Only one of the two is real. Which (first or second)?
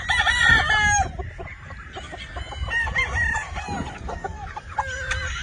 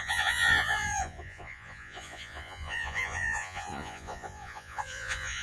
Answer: first